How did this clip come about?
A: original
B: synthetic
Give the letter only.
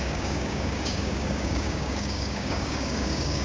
B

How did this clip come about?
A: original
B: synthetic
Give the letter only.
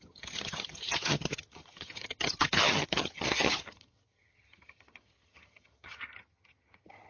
B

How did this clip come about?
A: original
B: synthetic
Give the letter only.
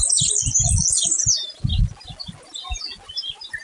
A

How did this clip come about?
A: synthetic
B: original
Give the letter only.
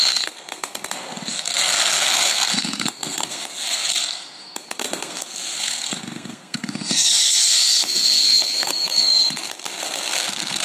A